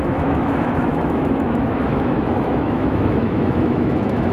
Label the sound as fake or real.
fake